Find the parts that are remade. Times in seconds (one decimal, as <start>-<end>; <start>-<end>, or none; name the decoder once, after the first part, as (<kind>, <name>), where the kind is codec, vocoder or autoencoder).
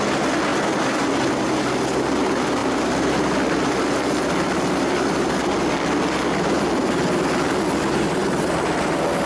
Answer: none